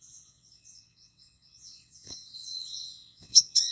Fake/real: fake